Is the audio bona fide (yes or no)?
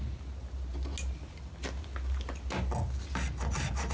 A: yes